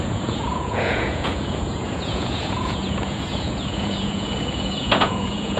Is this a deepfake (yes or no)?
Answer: yes